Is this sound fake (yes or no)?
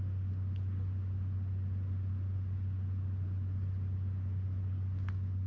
no